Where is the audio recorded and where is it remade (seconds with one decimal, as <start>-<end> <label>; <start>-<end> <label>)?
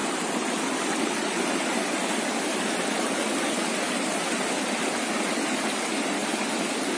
0.0-7.0 recorded